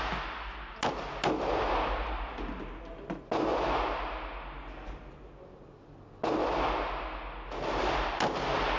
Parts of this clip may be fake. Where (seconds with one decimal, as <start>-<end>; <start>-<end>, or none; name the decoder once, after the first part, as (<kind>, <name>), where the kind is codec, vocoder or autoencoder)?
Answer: none